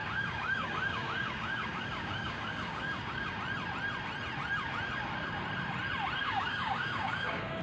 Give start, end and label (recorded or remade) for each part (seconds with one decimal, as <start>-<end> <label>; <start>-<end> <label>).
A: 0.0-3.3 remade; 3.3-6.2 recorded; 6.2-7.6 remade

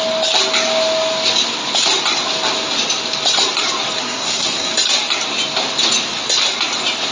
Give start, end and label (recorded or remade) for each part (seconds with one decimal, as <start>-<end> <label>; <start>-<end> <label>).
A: 0.0-4.0 recorded; 4.0-4.7 remade; 4.7-7.1 recorded

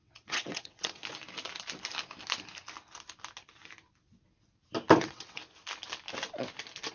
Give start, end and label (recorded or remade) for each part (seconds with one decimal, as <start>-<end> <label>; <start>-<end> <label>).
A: 0.0-1.0 remade; 1.0-5.0 recorded; 5.0-5.4 remade; 5.4-6.9 recorded

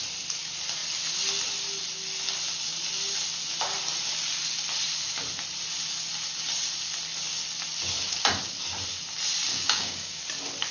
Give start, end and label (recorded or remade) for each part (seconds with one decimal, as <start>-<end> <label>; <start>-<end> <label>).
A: 0.0-9.5 recorded; 9.5-10.2 remade; 10.2-10.7 recorded

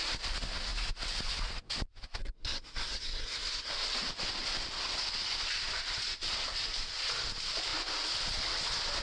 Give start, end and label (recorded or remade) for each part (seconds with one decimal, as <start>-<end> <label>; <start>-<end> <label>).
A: 0.0-2.2 recorded; 2.2-3.7 remade; 3.7-9.0 recorded

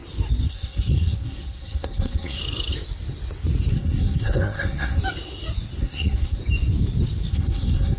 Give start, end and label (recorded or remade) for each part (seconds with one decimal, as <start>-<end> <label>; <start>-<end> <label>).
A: 0.0-0.5 recorded; 0.5-2.4 remade; 2.4-3.7 recorded; 3.7-5.0 remade; 5.0-5.8 recorded; 5.8-6.4 remade; 6.4-7.3 recorded; 7.3-8.0 remade

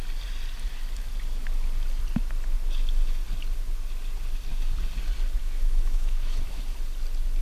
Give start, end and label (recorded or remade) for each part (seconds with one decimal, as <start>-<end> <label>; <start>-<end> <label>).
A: 0.0-5.4 recorded; 5.4-6.6 remade; 6.6-7.4 recorded